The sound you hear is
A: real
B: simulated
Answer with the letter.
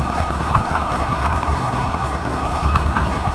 B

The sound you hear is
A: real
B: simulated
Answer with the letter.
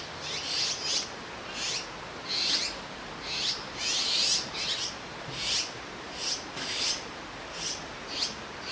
A